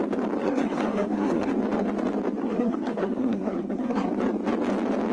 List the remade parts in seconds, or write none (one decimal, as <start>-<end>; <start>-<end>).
0.4-1.5; 2.4-4.1